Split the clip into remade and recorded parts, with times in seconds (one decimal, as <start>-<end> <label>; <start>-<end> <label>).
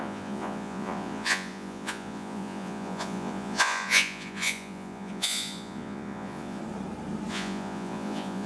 0.0-6.6 remade; 6.6-7.3 recorded; 7.3-8.5 remade